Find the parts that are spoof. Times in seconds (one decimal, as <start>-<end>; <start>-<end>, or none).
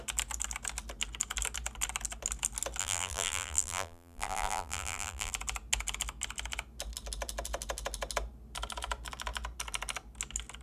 2.8-5.3